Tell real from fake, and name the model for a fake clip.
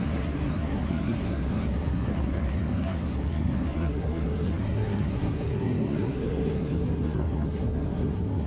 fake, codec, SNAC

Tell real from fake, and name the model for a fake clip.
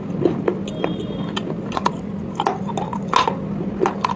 real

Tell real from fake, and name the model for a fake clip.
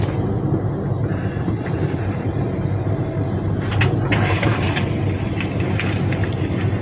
real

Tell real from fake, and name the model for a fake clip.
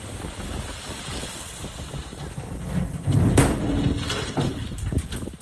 real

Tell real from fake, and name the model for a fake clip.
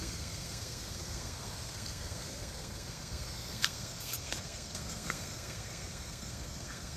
fake, codec, SNAC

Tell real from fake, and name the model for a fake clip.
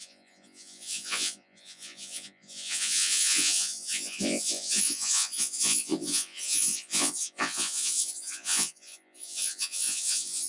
fake, vocoder, Vocos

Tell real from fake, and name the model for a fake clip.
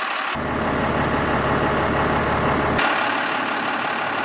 real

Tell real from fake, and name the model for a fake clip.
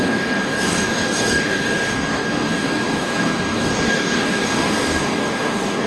fake, codec, DAC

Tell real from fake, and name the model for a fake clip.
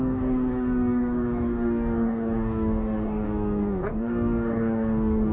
fake, codec, DAC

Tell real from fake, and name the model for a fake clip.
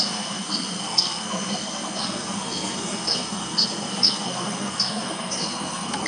fake, codec, SNAC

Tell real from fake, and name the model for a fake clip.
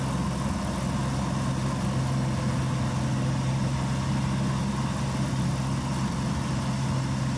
real